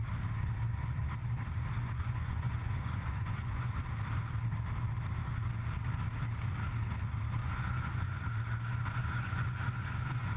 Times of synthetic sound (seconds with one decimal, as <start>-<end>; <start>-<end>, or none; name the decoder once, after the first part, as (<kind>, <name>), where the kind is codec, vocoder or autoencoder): 1.8-3.8 (vocoder, Vocos); 7.4-8.2; 9.0-10.4